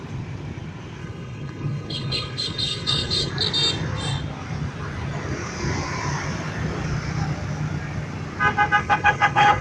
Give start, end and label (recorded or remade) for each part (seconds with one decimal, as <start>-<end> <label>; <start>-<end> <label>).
0.0-1.0 recorded; 1.0-3.3 remade; 3.3-8.8 recorded; 8.8-9.6 remade